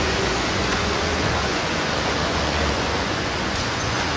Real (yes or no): no